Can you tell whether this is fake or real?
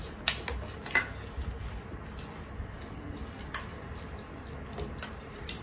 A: real